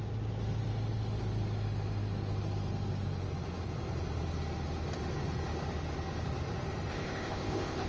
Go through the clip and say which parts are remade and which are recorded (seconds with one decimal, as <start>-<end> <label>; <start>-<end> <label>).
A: 0.0-6.9 recorded; 6.9-7.9 remade